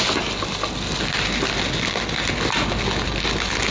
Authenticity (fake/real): real